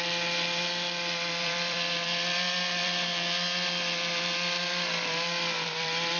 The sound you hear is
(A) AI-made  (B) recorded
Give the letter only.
A